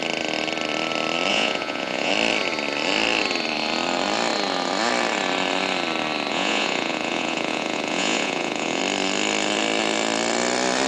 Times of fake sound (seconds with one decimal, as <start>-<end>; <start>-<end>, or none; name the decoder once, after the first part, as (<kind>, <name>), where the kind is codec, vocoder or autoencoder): 1.3-2.1 (vocoder, Vocos); 6.3-8.8